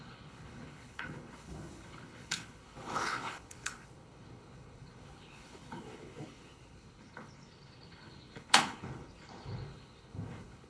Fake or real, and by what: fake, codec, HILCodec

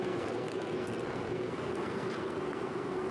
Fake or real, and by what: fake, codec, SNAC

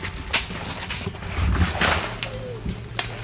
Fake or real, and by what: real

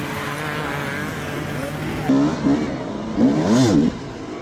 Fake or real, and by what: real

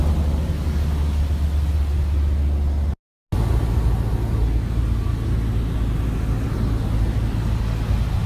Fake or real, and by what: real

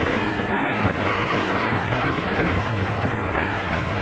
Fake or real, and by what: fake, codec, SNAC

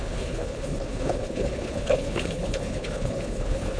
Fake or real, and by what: fake, codec, HILCodec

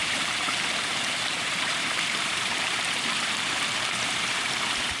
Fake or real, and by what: fake, vocoder, BigVGAN v2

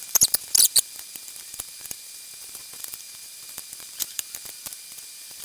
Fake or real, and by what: fake, vocoder, BigVGAN v2